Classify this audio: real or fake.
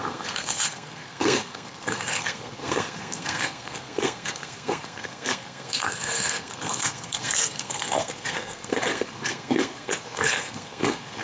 fake